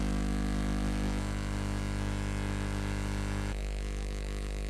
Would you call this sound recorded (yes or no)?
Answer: no